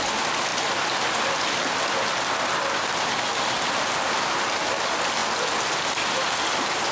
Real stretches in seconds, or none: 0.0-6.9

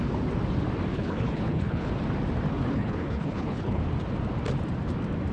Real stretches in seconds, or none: 0.0-0.9; 1.9-2.6; 3.8-5.3

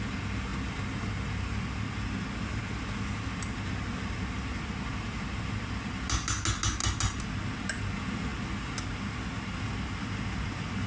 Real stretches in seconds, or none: 0.0-10.9

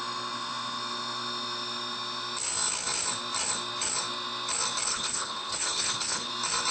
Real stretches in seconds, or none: 0.0-4.9; 6.3-6.7

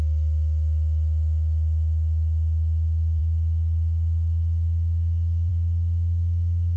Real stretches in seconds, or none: 0.0-6.8

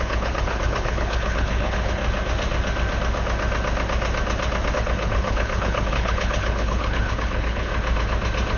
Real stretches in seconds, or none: 2.0-4.7; 7.7-8.6

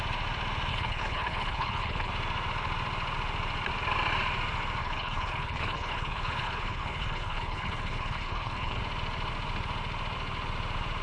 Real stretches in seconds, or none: 0.0-0.7; 2.1-4.8; 8.8-11.0